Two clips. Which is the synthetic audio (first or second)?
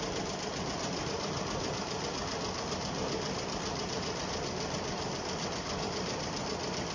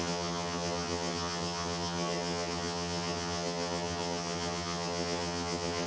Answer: second